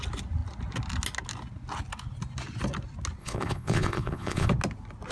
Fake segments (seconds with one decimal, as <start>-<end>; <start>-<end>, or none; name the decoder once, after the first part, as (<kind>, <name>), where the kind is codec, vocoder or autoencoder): 3.2-4.5 (vocoder, Vocos)